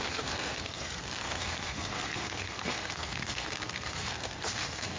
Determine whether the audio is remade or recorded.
remade